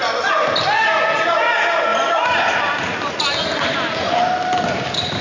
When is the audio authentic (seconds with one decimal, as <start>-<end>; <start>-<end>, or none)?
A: 0.0-1.9